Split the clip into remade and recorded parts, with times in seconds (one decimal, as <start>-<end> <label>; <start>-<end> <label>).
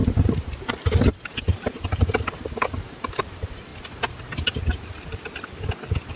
0.0-3.7 remade; 3.7-6.2 recorded